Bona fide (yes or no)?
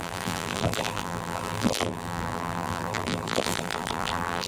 no